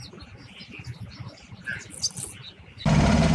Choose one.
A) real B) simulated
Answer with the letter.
A